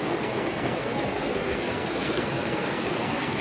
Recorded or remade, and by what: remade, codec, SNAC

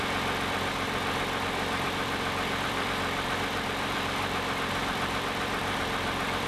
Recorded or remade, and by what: remade, vocoder, BigVGAN v2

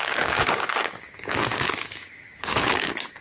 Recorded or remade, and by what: remade, codec, DAC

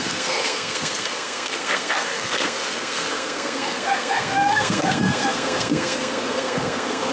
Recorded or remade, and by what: remade, codec, SNAC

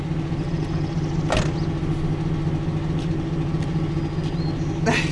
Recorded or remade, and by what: recorded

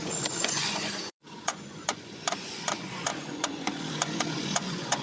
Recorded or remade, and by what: remade, vocoder, Vocos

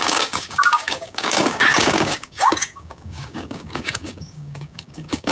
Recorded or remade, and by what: remade, codec, DAC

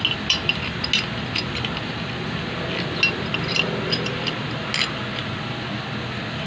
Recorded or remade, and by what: recorded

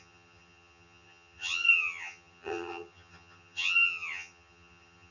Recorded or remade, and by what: remade, vocoder, HiFi-GAN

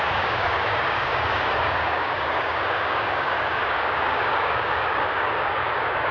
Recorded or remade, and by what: remade, codec, DAC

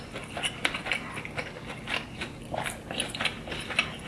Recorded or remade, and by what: recorded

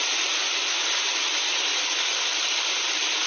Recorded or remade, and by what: recorded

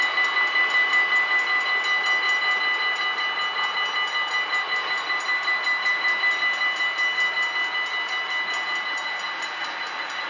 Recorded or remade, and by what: recorded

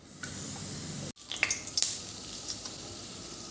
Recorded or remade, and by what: recorded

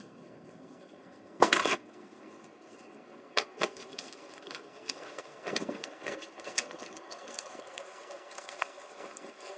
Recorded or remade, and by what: remade, codec, SNAC